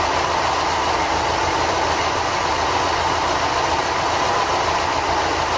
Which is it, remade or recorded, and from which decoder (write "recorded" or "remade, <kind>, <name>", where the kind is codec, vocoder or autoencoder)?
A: recorded